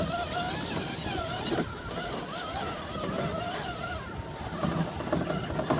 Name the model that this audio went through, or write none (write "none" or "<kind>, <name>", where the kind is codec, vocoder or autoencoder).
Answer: none